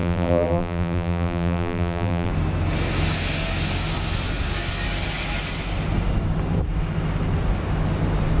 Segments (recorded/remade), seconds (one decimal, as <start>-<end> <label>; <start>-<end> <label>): 0.0-2.3 remade; 2.3-8.4 recorded